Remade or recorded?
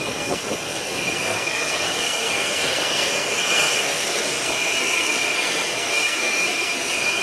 remade